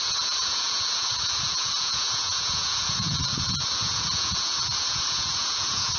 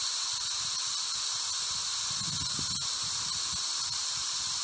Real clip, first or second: second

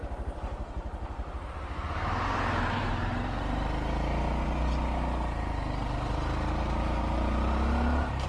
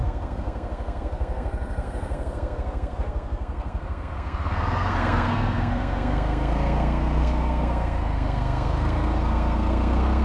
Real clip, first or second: first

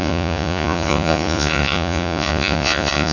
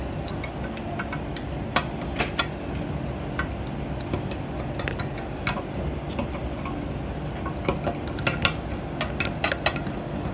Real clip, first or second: second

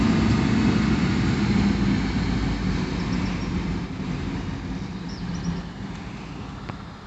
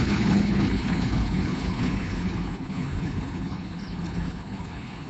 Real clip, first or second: first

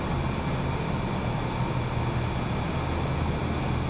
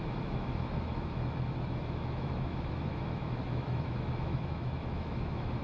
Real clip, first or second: first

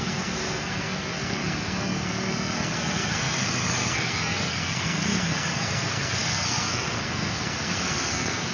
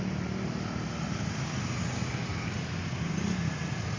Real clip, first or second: second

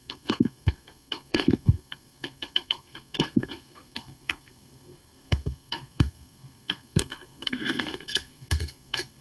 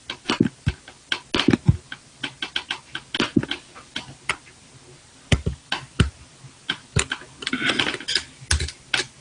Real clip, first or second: second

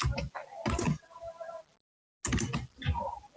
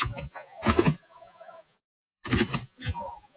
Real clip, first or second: first